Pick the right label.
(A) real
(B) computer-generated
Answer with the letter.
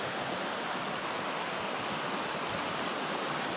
A